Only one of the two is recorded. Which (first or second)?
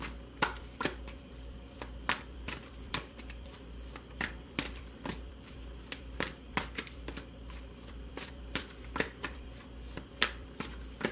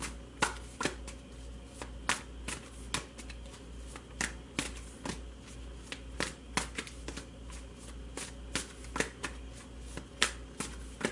second